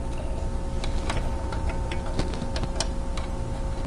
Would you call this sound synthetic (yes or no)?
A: no